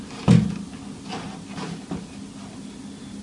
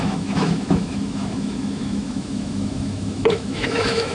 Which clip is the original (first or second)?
first